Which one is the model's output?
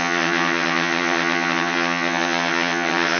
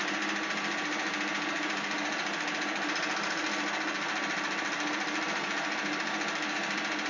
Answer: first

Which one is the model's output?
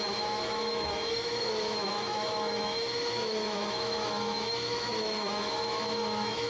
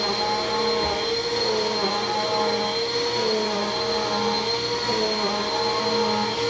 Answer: first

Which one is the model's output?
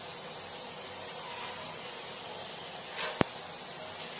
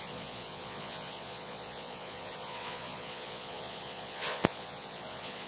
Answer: second